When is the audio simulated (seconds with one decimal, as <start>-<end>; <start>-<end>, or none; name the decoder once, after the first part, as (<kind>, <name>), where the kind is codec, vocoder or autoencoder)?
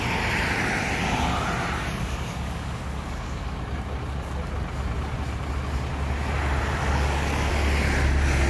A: 1.8-3.6 (codec, DAC); 6.8-7.5